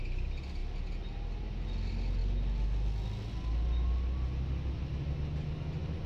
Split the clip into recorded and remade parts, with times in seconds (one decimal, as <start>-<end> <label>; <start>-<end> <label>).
0.0-6.1 recorded